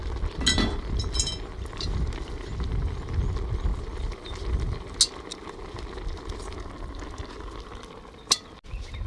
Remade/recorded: recorded